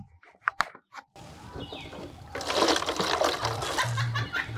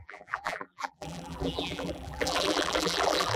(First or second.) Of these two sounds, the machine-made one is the second